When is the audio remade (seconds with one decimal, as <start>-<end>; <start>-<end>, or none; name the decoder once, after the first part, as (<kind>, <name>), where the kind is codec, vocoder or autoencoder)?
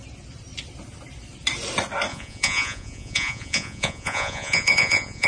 2.1-5.3 (vocoder, Vocos)